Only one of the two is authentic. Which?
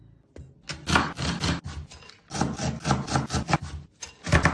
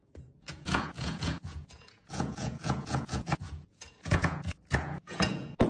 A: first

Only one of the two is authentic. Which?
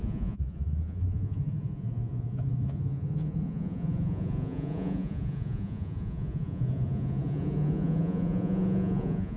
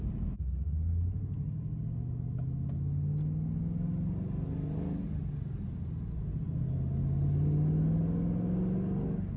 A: second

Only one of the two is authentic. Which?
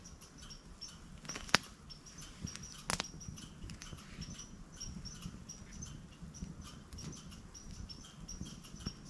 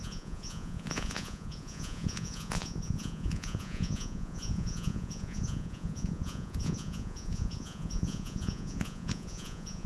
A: first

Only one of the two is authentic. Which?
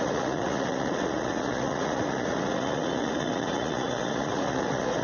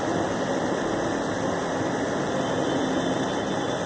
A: second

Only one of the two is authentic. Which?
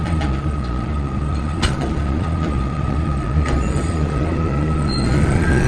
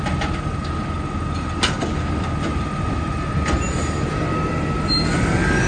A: second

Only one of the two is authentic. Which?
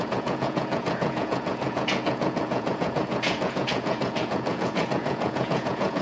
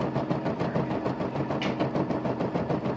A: second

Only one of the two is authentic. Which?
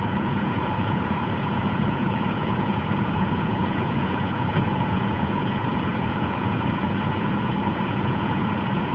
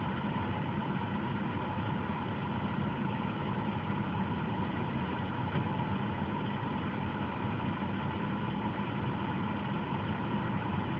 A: second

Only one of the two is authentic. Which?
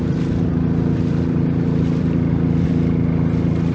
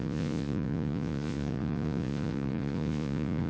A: first